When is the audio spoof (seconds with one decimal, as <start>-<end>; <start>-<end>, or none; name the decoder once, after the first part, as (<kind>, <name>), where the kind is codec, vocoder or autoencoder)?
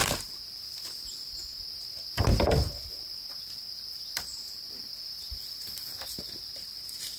3.7-4.2 (vocoder, BigVGAN v2)